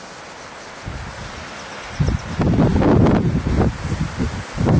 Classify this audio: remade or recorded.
recorded